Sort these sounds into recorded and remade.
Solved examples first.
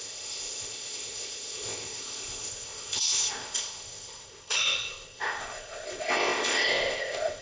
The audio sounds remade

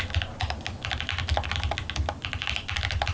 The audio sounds recorded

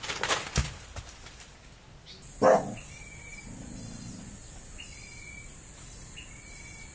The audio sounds recorded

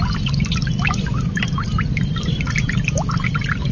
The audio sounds recorded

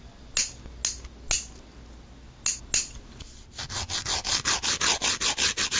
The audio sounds recorded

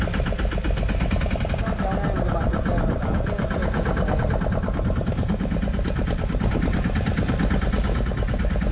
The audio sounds recorded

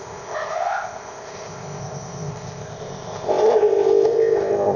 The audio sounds remade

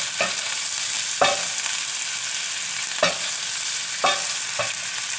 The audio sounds recorded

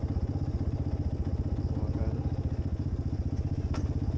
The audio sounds recorded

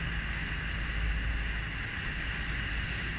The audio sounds recorded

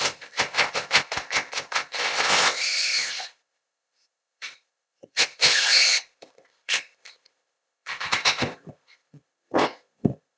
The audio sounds remade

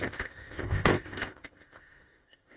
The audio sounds remade